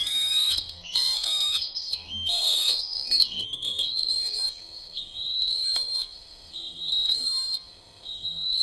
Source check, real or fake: fake